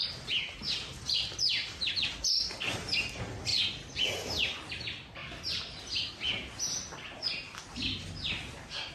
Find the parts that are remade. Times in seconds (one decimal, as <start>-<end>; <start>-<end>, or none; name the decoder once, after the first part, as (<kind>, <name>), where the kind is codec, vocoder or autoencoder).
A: 0.0-2.2 (vocoder, BigVGAN v2); 5.2-6.1